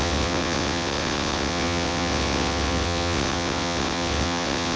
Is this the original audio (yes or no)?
no